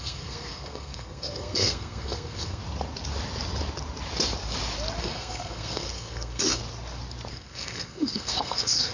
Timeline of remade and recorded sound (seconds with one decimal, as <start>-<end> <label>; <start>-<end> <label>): 0.0-2.6 remade; 2.6-5.0 recorded; 5.0-6.6 remade; 6.6-7.3 recorded; 7.3-8.9 remade